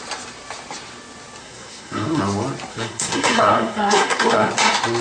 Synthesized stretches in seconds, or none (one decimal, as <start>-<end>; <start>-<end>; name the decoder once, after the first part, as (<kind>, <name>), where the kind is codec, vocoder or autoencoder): 1.4-2.2 (codec, SNAC); 2.7-4.5